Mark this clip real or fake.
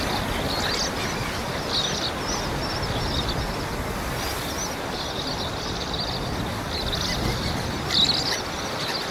real